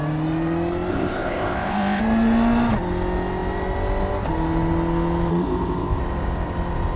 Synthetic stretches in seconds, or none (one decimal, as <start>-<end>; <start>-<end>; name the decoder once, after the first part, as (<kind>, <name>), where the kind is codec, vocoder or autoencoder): 0.9-2.0 (codec, ZipCodec); 5.3-6.0